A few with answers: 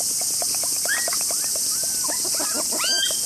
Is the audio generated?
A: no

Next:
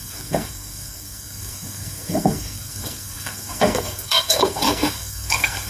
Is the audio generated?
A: yes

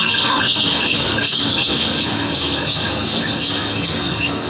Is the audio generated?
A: yes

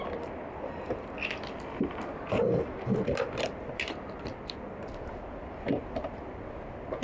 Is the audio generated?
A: no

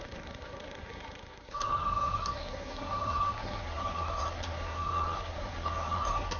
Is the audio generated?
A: yes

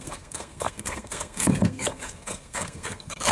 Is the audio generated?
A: yes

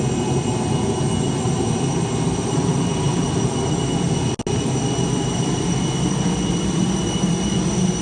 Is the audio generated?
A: no